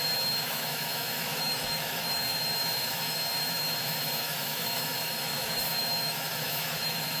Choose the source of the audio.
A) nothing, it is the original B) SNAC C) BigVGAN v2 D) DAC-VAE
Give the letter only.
D